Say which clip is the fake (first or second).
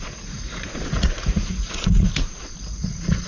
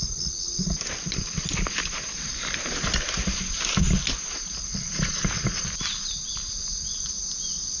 first